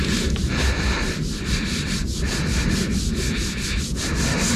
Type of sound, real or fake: real